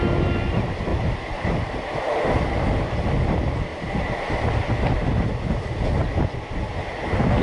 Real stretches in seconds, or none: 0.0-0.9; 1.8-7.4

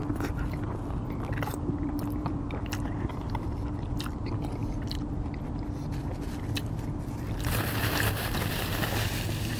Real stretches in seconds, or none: none

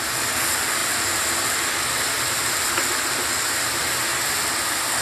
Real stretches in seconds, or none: 0.0-0.8; 2.7-5.0

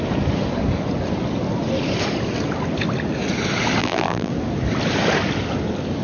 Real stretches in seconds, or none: 0.0-3.8; 4.3-6.0

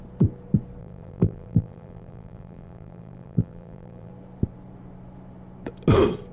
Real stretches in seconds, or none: 0.0-0.8; 4.1-6.3

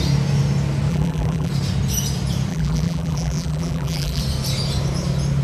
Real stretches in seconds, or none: 0.0-0.9; 1.5-2.5; 4.2-5.4